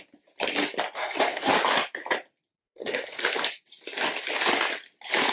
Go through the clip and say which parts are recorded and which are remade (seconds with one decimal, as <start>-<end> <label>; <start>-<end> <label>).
0.0-1.0 recorded; 1.0-1.5 remade; 1.5-2.6 recorded; 2.6-3.2 remade; 3.2-5.3 recorded